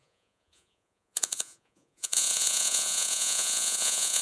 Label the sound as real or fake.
fake